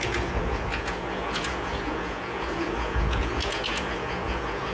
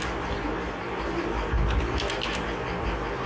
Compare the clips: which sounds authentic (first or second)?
second